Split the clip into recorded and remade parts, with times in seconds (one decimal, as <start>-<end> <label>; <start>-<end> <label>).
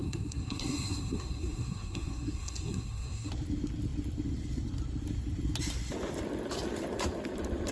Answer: 0.0-3.3 remade; 3.3-7.7 recorded